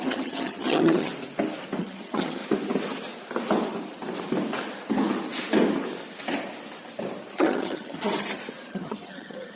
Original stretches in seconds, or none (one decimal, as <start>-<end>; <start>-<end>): 1.1-1.8; 2.4-7.3; 8.1-8.7